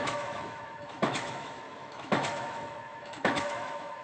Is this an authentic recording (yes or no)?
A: no